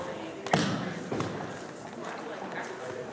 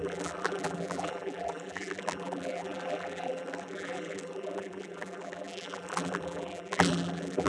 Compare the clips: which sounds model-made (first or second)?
second